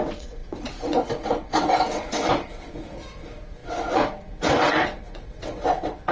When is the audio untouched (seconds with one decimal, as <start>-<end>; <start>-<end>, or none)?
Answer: none